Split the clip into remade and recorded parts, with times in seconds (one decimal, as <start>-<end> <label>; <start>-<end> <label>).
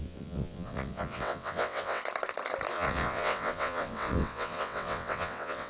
0.0-2.0 remade; 2.0-2.7 recorded; 2.7-5.7 remade